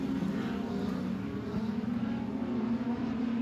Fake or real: real